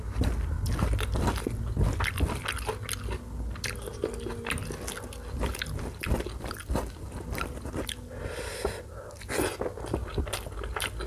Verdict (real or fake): real